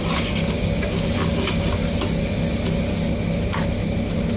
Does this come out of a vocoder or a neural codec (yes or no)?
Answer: no